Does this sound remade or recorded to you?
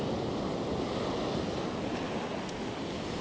recorded